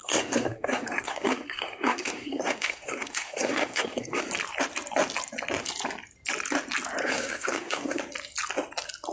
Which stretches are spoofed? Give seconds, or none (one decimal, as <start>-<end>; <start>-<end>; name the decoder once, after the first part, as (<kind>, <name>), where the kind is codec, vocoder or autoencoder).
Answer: 0.0-4.2 (codec, SNAC); 7.0-8.0